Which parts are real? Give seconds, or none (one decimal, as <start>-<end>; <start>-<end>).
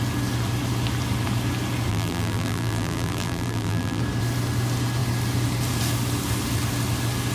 0.0-1.9; 4.0-7.3